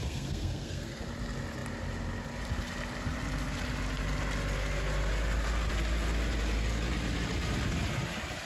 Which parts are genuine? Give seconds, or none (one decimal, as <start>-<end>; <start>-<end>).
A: 1.0-8.5